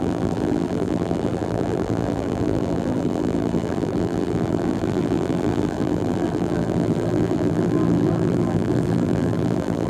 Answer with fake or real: fake